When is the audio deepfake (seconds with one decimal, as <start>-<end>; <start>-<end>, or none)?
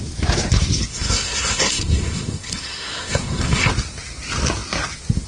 0.9-3.7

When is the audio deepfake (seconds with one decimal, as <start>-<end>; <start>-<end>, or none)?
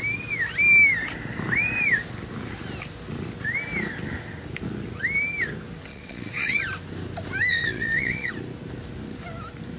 5.9-6.6; 7.5-8.3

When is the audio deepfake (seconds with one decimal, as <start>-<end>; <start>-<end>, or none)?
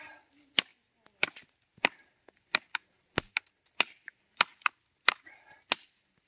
none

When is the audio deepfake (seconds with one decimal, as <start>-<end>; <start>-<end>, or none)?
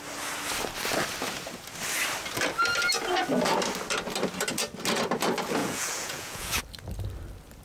5.6-6.6